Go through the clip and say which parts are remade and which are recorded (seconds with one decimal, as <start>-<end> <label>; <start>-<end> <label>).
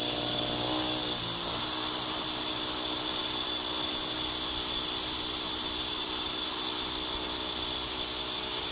0.0-8.7 recorded